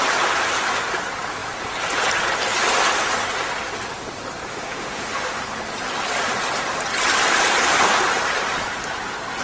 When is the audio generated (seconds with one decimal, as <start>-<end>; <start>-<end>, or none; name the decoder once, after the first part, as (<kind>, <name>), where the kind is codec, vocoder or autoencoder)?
4.5-5.4 (autoencoder, DAC-VAE)